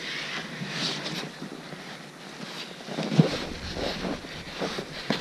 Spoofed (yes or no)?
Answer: no